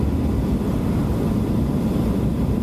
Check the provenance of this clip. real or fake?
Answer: real